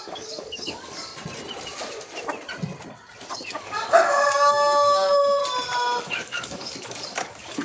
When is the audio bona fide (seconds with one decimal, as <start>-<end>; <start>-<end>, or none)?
1.1-3.3; 5.4-6.0

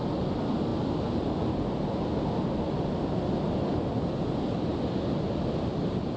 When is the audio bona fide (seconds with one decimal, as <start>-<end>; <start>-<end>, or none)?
0.0-6.2

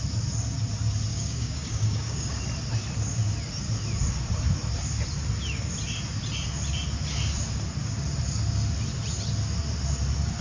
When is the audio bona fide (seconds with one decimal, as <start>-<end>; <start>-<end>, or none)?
0.0-1.1; 2.4-10.4

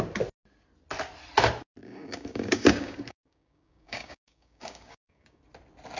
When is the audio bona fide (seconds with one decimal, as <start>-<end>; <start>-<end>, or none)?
0.0-1.8; 5.4-6.0

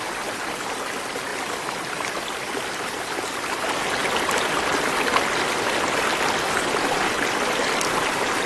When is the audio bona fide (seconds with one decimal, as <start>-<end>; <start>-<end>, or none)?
0.0-8.5

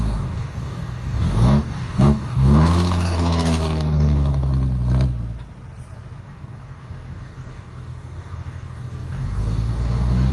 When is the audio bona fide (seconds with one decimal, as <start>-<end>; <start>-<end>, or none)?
4.5-6.2

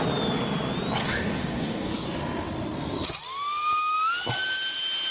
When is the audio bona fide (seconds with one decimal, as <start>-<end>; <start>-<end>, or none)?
0.0-1.0; 1.9-5.1